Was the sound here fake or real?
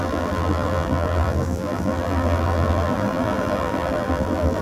fake